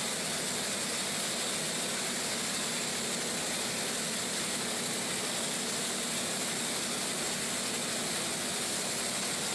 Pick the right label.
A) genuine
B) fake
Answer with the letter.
A